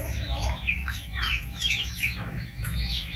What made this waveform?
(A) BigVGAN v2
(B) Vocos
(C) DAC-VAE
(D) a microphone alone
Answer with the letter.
C